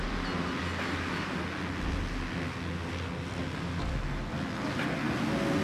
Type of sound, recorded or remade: recorded